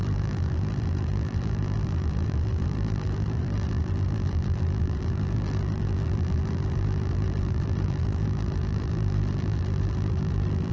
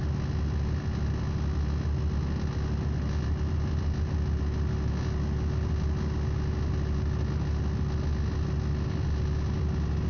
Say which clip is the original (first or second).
second